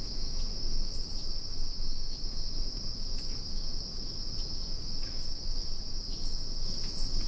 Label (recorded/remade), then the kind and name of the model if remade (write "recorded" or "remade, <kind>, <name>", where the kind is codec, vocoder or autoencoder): remade, autoencoder, DAC-VAE